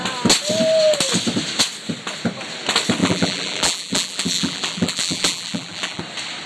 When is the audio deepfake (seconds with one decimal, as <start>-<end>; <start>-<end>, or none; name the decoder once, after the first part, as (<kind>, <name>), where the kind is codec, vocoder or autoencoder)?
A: 3.0-6.0 (vocoder, BigVGAN v2)